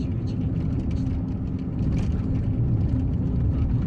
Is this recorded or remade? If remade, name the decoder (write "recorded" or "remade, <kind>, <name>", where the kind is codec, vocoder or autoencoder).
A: recorded